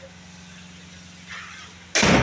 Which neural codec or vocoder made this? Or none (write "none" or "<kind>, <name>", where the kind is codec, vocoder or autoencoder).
none